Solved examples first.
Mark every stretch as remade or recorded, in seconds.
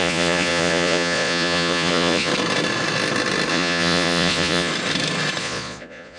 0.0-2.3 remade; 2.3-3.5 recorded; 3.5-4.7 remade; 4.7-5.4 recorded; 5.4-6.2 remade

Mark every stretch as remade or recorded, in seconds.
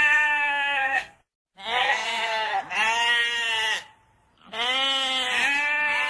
0.0-1.2 remade; 1.2-1.8 recorded; 1.8-2.5 remade; 2.5-6.1 recorded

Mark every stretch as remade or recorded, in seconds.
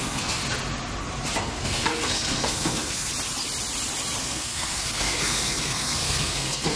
0.0-0.4 remade; 0.4-1.4 recorded; 1.4-3.1 remade; 3.1-4.2 recorded; 4.2-6.8 remade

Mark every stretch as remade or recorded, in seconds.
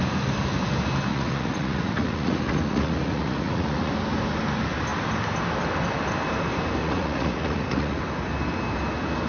0.0-1.1 recorded; 1.1-3.9 remade; 3.9-6.8 recorded; 6.8-8.0 remade; 8.0-9.3 recorded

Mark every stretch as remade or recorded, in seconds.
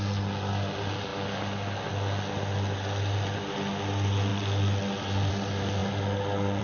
0.0-6.6 recorded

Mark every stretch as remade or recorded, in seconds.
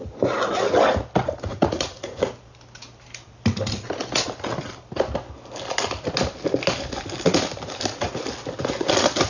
0.0-1.5 recorded; 1.5-2.2 remade; 2.2-9.3 recorded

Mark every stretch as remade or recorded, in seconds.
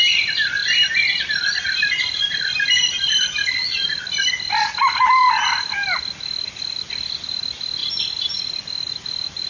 0.0-0.6 recorded; 0.6-4.3 remade; 4.3-7.8 recorded; 7.8-8.4 remade; 8.4-9.5 recorded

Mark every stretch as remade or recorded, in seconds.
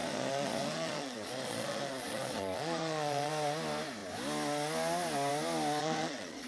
0.0-3.3 remade; 3.3-5.8 recorded; 5.8-6.5 remade